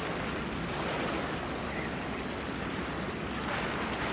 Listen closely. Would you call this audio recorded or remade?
recorded